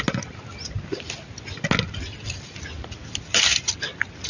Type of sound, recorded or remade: recorded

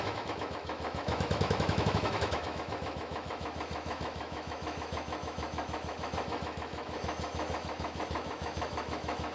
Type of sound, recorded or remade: remade